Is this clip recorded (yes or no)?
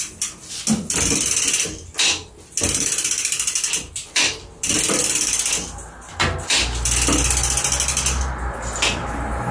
yes